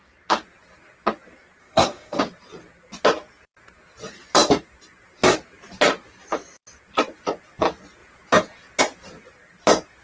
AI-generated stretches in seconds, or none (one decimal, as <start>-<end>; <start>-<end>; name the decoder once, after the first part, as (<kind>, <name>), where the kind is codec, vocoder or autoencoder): 1.6-2.2 (codec, SNAC)